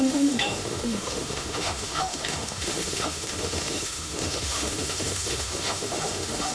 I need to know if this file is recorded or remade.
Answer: remade